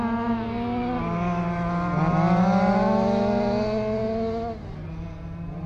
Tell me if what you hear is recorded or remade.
recorded